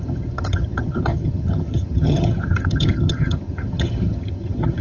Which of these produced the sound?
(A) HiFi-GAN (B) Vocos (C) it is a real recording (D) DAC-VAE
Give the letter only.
A